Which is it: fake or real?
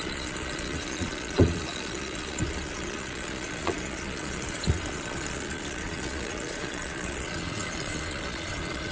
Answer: fake